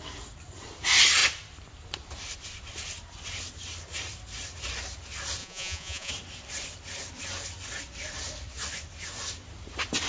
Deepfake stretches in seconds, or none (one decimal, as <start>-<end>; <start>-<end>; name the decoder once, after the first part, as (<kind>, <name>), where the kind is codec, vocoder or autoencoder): 5.4-6.1 (vocoder, Vocos)